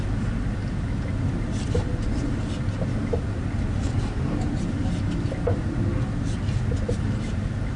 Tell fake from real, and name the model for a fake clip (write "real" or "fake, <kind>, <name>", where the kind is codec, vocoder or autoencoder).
real